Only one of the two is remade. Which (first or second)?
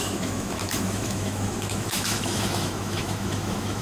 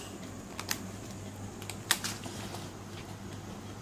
first